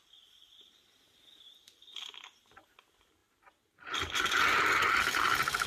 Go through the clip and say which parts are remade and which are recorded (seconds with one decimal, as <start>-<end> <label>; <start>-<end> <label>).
0.0-5.7 recorded